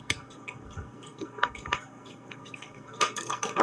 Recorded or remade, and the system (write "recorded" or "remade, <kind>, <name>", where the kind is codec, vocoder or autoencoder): remade, codec, SNAC